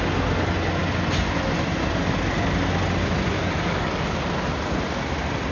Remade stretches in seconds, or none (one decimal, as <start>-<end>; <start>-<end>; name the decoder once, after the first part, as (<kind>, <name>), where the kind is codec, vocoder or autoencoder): 3.4-4.2 (codec, DAC)